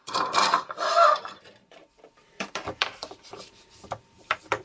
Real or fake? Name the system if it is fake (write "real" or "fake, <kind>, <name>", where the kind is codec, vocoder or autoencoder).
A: fake, vocoder, BigVGAN v2